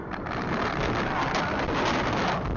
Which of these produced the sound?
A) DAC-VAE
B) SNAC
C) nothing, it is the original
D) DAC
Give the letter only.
C